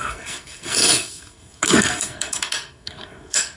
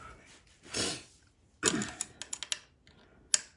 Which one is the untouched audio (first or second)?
second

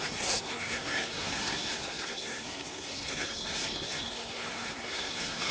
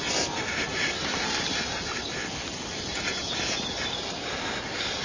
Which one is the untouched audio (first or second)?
second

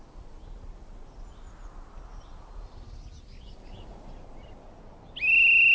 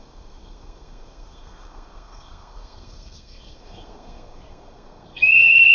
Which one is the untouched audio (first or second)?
first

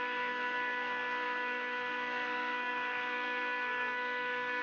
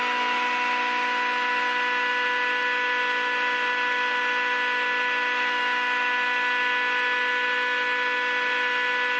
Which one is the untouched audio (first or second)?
second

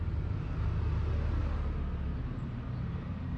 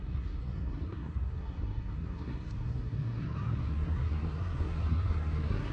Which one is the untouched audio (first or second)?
first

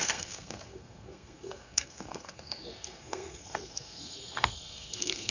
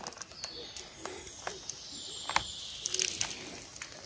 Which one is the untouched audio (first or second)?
second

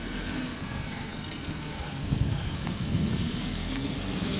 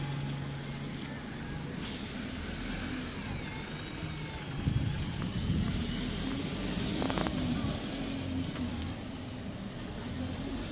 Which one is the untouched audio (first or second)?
second